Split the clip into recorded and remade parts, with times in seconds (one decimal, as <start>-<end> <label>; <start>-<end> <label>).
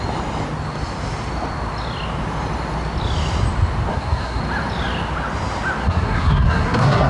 0.0-3.9 recorded; 3.9-4.4 remade; 4.4-5.8 recorded; 5.8-7.1 remade